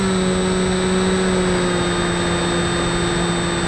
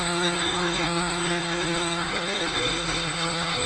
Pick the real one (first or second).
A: first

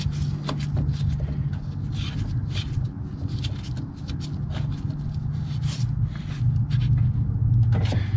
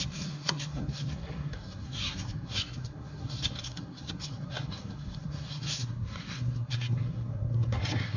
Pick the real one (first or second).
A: first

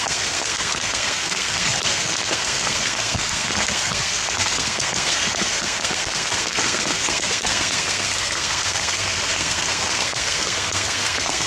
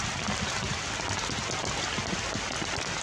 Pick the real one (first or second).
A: second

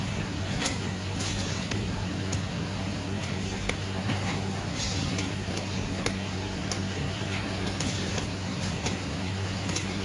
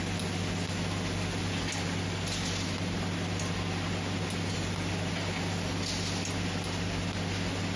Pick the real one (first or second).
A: second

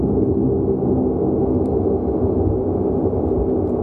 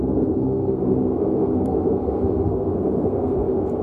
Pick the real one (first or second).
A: first